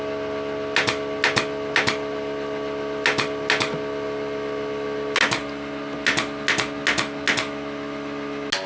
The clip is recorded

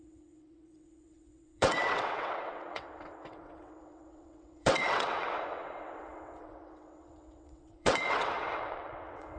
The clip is remade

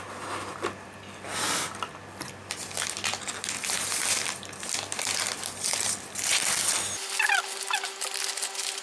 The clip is recorded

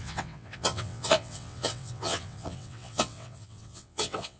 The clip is remade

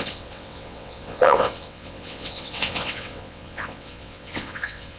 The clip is remade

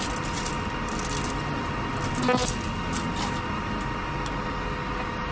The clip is recorded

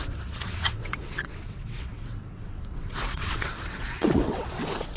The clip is remade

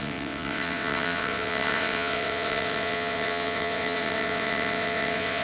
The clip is remade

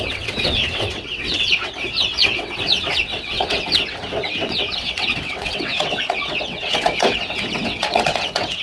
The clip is remade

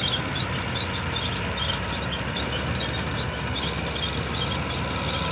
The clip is recorded